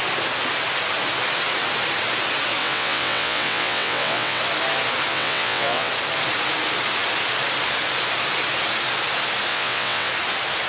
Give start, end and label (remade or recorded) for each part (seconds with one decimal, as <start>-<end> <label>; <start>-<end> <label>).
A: 0.0-2.6 recorded; 2.6-4.4 remade; 4.4-5.1 recorded; 5.1-5.9 remade; 5.9-9.5 recorded; 9.5-10.1 remade; 10.1-10.7 recorded